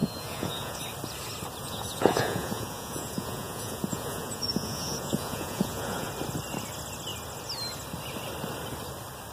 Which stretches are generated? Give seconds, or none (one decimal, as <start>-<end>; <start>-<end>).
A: 0.0-0.8; 1.6-6.1